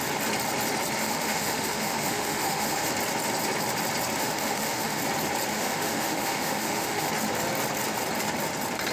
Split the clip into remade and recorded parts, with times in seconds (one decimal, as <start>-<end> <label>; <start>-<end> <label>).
0.0-1.0 recorded; 1.0-2.9 remade; 2.9-4.2 recorded; 4.2-5.0 remade; 5.0-5.5 recorded; 5.5-7.1 remade; 7.1-8.9 recorded